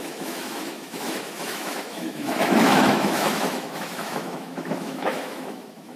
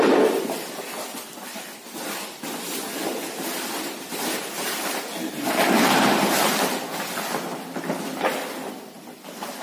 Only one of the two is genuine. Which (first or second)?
second